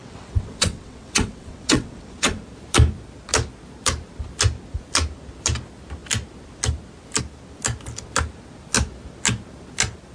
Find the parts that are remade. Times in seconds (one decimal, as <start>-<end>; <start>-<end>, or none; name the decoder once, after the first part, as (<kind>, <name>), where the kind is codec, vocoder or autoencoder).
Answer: 0.0-2.4 (vocoder, WaveNeXt)

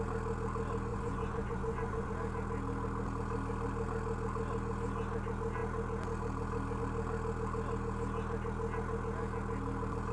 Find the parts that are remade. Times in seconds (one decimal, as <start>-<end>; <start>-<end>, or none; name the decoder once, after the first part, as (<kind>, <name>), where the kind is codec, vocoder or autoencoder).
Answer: 0.9-2.1 (vocoder, Vocos)

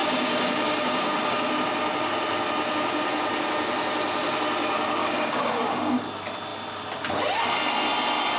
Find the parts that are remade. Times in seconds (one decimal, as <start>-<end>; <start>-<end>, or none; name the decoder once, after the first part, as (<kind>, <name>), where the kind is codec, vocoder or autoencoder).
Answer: 0.0-1.5 (codec, DAC); 5.0-6.0

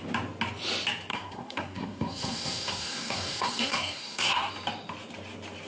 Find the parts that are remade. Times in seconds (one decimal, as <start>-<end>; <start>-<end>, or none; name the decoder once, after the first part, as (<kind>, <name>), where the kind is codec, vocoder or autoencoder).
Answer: 1.1-4.5 (codec, SNAC)

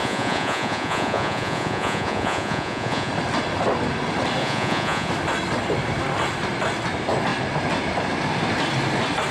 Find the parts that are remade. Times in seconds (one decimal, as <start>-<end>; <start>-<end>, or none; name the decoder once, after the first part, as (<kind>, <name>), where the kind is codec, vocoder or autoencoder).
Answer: 0.0-3.1 (vocoder, Vocos); 4.4-5.1

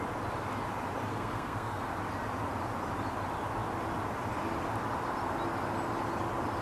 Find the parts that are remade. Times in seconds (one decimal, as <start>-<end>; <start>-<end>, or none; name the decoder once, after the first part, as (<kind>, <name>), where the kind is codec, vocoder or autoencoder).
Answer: 1.1-1.8 (codec, SNAC)

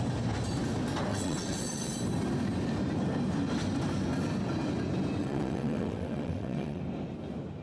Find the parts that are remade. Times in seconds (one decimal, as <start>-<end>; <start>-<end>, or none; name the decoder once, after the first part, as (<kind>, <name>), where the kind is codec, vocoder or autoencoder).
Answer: 1.1-1.9 (vocoder, WaveNeXt); 5.2-6.8